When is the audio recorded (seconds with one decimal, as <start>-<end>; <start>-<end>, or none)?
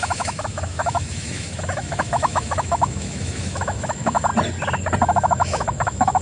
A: 4.3-5.0